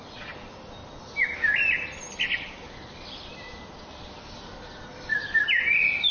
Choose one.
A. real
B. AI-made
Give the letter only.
A